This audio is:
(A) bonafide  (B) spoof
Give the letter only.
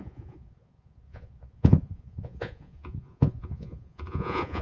B